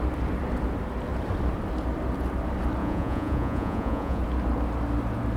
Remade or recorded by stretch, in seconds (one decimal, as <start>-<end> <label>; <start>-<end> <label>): 0.0-2.8 recorded; 2.8-4.2 remade; 4.2-5.4 recorded